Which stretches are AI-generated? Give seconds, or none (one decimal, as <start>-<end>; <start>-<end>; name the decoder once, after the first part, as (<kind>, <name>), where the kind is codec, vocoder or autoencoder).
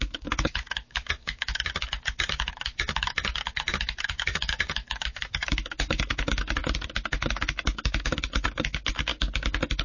0.0-6.6 (autoencoder, DAC-VAE); 7.1-9.1